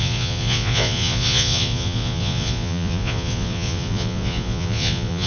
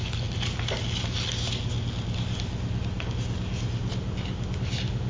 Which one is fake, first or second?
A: first